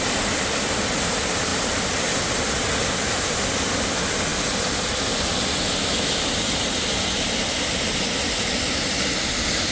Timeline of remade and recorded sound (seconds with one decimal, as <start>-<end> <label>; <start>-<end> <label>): 0.0-9.7 recorded